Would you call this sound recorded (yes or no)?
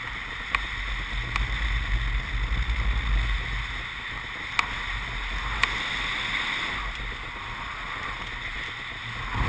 yes